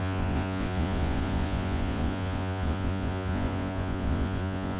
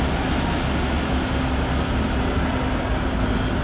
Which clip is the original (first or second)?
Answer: second